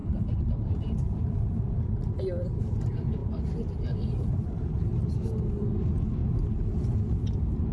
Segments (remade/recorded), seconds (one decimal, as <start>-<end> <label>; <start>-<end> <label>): 0.0-2.8 remade; 2.8-3.2 recorded; 3.2-4.7 remade; 4.7-7.7 recorded